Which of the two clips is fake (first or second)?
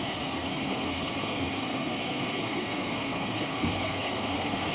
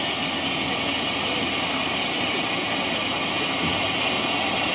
first